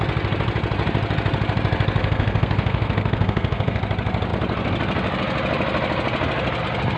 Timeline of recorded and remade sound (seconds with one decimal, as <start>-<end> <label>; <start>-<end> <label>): 0.0-2.0 recorded; 2.0-3.8 remade; 3.8-7.0 recorded